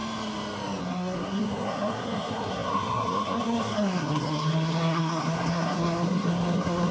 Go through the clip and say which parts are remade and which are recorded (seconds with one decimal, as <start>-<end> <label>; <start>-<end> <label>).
0.0-0.8 recorded; 0.8-6.9 remade